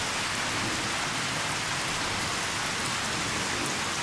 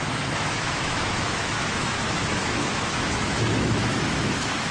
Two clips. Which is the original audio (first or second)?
first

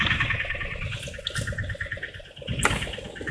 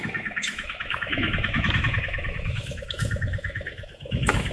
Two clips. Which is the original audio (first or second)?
first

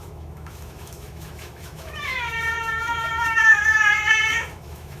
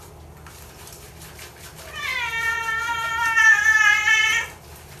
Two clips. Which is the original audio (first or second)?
second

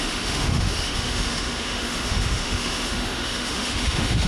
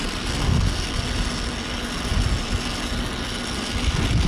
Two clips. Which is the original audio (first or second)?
second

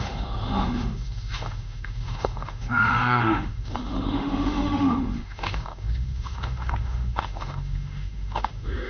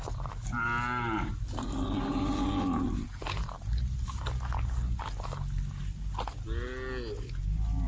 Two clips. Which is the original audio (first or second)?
second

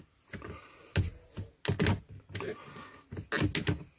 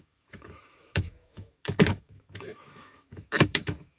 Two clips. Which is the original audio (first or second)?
first